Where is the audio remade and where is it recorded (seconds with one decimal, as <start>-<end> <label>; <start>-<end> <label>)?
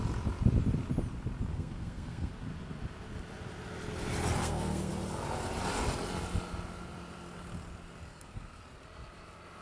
0.0-1.5 recorded; 1.5-2.3 remade; 2.3-4.4 recorded; 4.4-4.9 remade; 4.9-8.1 recorded; 8.1-8.6 remade; 8.6-9.6 recorded